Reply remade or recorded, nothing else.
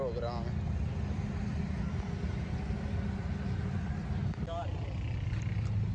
recorded